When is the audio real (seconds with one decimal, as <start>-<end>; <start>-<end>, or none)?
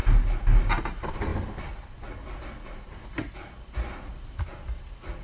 0.0-5.2